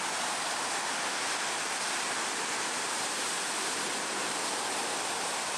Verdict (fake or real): real